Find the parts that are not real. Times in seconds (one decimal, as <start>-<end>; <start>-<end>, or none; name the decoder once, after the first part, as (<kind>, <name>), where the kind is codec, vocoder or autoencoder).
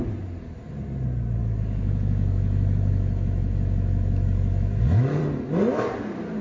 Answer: 1.4-5.2 (autoencoder, DAC-VAE)